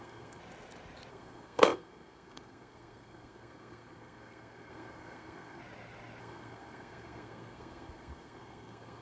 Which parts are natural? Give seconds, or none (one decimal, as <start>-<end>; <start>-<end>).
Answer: 0.4-1.1; 5.6-6.2